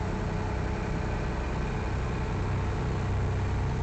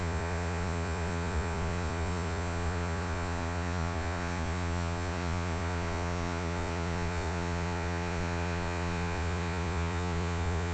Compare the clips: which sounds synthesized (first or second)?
second